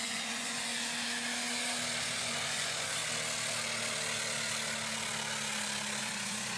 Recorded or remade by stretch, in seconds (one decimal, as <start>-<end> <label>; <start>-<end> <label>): 0.0-0.7 remade; 0.7-2.0 recorded; 2.0-3.0 remade; 3.0-6.0 recorded; 6.0-6.6 remade